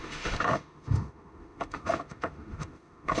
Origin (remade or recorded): remade